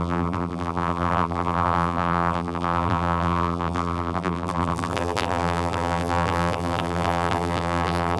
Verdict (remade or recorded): remade